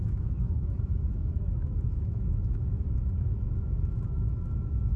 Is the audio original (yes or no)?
no